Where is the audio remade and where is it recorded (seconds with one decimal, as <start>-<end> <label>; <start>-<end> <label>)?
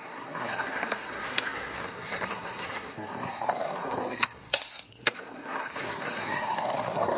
0.0-7.2 remade